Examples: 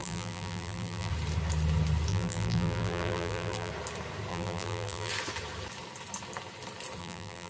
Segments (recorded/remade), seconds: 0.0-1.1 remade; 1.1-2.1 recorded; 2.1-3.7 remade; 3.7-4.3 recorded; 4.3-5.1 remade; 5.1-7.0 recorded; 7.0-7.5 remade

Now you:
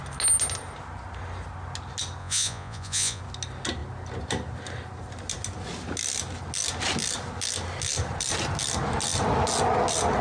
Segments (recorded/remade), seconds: 0.0-2.2 recorded; 2.2-3.2 remade; 3.2-10.2 recorded